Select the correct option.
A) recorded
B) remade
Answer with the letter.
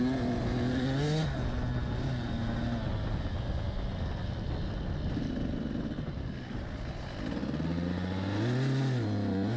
A